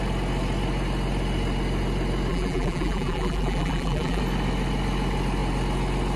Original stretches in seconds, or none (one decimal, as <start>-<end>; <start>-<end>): 0.0-2.3; 4.2-6.2